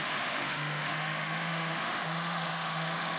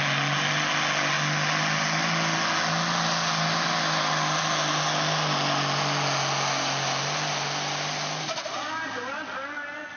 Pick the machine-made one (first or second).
first